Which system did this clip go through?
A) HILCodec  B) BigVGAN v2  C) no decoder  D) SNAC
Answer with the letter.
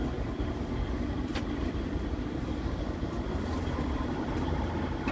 C